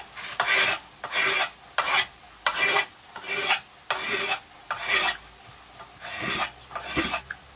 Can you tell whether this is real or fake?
real